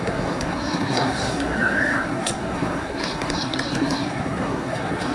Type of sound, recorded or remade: remade